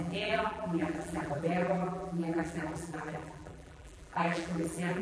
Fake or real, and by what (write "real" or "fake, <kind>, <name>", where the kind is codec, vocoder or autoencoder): fake, vocoder, BigVGAN v2